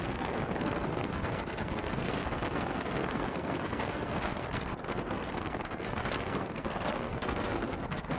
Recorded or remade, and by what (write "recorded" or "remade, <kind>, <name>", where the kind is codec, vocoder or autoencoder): remade, codec, SNAC